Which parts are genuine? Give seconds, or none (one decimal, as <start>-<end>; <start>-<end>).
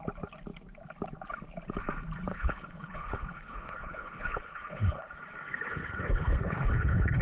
0.0-2.3; 5.1-5.7